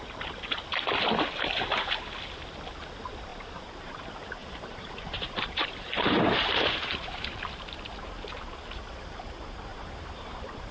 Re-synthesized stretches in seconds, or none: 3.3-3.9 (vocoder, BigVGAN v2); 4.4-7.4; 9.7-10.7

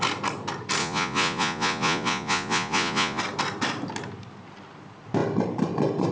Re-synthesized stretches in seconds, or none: 0.8-3.2 (vocoder, Vocos)

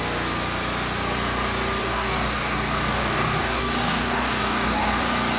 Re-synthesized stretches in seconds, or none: 1.8-5.0 (codec, DAC)

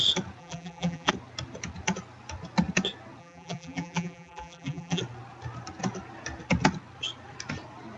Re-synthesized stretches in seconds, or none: 0.4-1.1 (vocoder, BigVGAN v2); 3.2-5.0